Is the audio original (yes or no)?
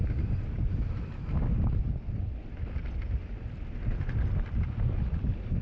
no